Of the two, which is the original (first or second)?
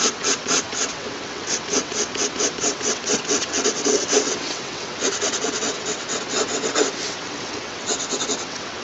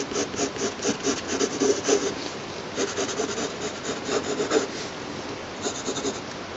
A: second